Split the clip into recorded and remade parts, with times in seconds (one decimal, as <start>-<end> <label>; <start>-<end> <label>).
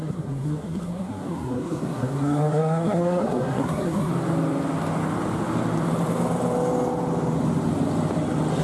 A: 0.0-4.1 remade; 4.1-8.6 recorded